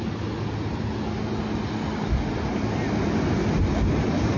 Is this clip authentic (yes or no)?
yes